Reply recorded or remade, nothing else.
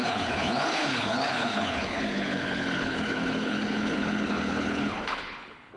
remade